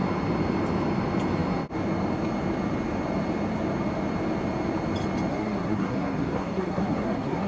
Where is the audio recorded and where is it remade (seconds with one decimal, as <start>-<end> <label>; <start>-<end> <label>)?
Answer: 0.0-5.3 recorded; 5.3-7.5 remade